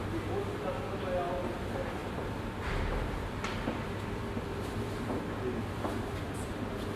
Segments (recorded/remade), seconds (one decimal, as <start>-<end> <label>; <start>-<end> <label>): 0.0-7.0 recorded